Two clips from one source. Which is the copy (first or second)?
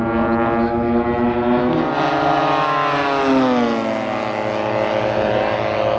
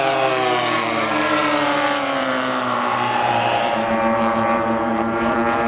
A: second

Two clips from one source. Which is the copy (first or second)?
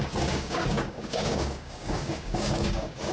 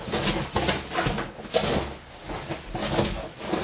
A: first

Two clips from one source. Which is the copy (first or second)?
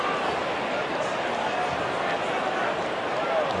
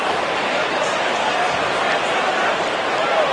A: second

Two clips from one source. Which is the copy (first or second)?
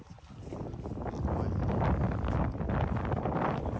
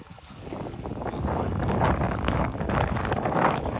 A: second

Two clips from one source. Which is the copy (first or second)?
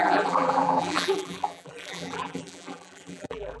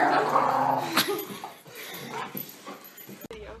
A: first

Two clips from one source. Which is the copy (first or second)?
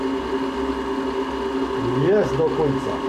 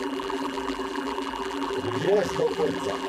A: second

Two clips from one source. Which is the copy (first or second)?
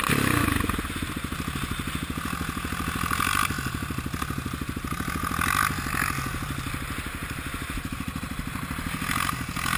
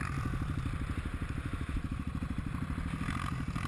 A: second